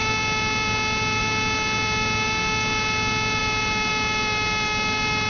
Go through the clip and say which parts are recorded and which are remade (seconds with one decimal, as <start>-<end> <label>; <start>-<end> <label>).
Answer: 0.0-5.3 recorded